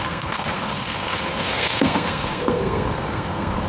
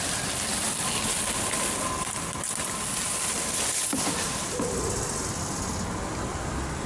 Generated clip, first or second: first